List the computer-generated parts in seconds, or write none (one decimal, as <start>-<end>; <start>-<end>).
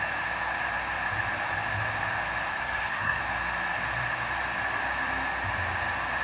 2.5-3.2